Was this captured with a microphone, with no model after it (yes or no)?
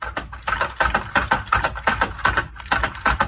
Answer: yes